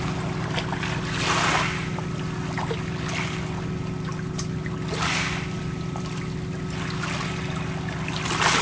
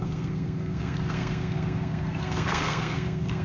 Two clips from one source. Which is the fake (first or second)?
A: second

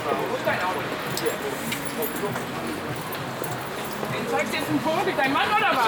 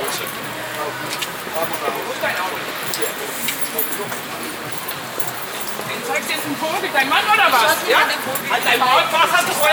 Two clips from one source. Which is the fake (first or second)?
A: second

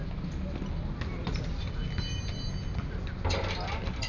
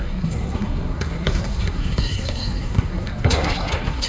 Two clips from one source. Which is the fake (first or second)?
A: second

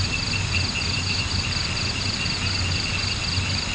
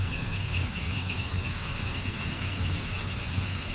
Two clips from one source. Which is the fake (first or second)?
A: second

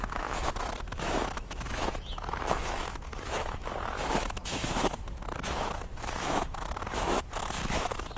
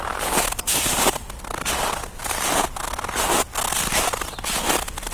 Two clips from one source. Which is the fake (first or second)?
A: first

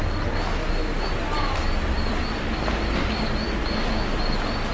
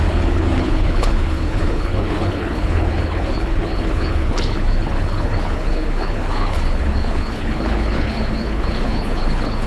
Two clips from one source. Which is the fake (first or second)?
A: second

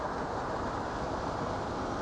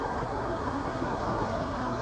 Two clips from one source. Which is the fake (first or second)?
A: second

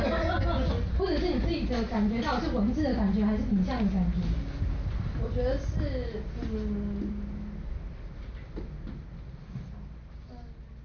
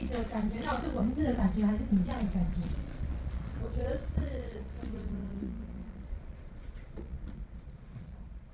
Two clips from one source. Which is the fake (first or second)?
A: second